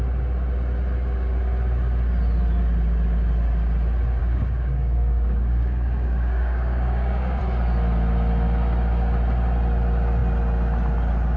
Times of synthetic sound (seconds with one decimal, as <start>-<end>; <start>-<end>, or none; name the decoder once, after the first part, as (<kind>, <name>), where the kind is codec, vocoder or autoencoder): 4.2-7.4 (codec, DAC)